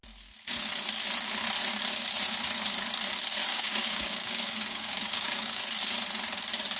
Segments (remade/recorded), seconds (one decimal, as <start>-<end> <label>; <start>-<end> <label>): 0.0-3.5 recorded; 3.5-5.6 remade; 5.6-6.8 recorded